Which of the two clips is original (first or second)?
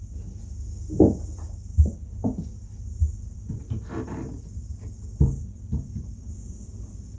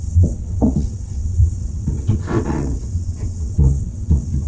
first